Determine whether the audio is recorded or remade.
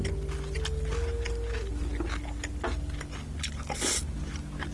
recorded